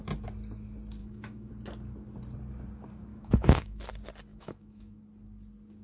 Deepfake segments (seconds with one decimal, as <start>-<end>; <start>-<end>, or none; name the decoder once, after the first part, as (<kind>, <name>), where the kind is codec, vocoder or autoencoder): 1.0-1.5 (autoencoder, DAC-VAE); 3.1-3.9; 4.3-5.0